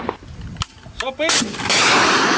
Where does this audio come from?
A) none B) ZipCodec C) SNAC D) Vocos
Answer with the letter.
A